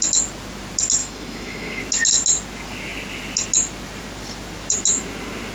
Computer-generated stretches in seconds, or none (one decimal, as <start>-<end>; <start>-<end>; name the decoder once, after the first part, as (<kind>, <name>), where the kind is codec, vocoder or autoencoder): 1.0-1.8 (autoencoder, DAC-VAE)